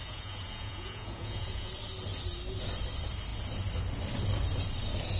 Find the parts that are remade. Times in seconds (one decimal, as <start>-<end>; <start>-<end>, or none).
0.0-1.7